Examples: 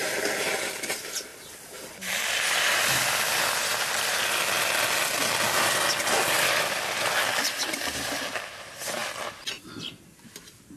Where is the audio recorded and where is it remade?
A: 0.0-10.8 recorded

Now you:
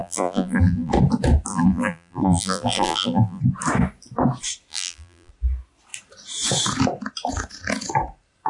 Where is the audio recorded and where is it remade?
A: 0.0-0.9 remade; 0.9-1.5 recorded; 1.5-3.4 remade; 3.4-4.7 recorded; 4.7-5.3 remade; 5.3-8.5 recorded

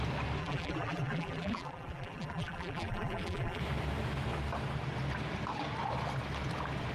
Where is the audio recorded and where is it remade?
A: 0.0-0.4 recorded; 0.4-3.6 remade; 3.6-6.9 recorded

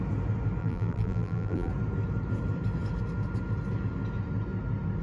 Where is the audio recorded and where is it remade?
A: 0.0-0.6 recorded; 0.6-1.7 remade; 1.7-5.0 recorded